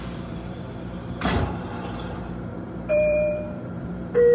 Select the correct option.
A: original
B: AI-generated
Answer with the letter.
B